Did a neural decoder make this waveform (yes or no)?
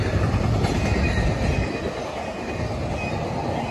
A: no